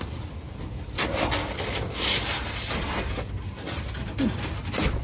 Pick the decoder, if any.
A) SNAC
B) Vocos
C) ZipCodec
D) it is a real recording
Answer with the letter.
D